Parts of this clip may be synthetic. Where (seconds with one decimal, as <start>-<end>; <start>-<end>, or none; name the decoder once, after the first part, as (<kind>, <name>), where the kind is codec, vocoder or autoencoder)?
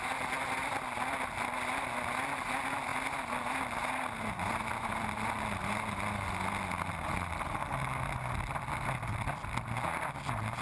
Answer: none